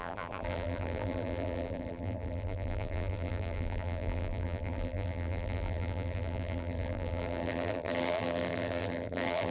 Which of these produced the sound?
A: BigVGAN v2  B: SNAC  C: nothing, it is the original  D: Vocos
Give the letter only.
A